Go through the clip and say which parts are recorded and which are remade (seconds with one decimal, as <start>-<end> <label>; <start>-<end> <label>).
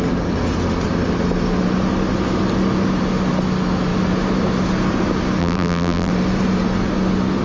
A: 0.0-5.4 recorded; 5.4-6.1 remade; 6.1-7.4 recorded